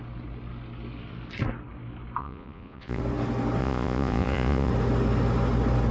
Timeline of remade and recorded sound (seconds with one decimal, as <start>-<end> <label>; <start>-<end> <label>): 0.0-2.2 recorded; 2.2-3.0 remade; 3.0-3.6 recorded; 3.6-4.7 remade; 4.7-5.9 recorded